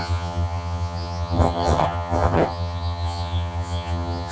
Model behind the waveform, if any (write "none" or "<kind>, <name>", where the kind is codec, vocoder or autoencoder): vocoder, HiFi-GAN